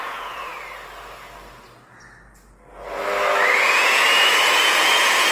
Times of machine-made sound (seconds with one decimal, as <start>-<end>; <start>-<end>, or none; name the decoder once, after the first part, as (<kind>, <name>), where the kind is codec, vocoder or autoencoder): 0.0-0.5 (vocoder, Vocos); 3.7-5.3